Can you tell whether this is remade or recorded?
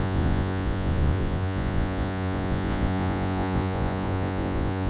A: remade